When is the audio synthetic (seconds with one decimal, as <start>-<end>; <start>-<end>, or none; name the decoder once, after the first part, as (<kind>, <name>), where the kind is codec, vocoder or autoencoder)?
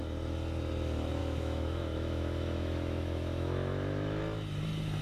1.2-4.2 (autoencoder, DAC-VAE)